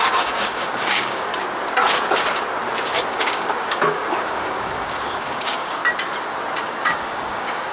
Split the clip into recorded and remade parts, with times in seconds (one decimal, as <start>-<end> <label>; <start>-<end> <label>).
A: 0.0-1.3 remade; 1.3-3.1 recorded; 3.1-5.8 remade; 5.8-6.6 recorded; 6.6-7.7 remade